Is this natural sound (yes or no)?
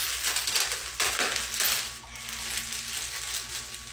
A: yes